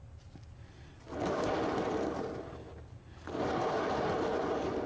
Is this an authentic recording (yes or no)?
yes